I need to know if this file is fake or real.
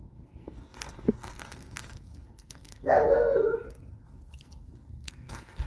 fake